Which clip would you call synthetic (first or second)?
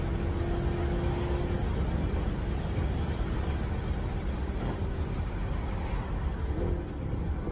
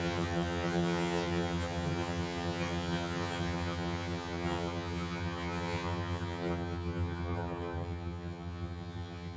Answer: second